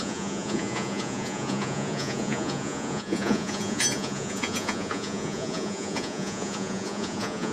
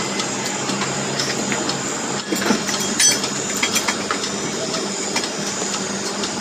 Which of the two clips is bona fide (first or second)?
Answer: second